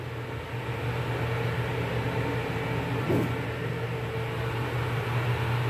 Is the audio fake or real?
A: real